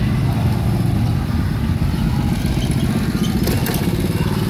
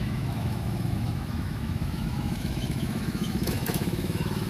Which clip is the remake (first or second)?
second